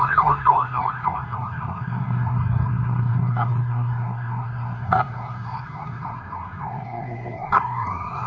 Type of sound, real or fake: fake